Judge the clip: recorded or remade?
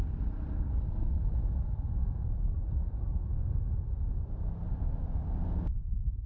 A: recorded